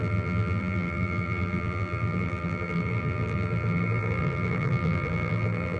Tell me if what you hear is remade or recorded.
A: remade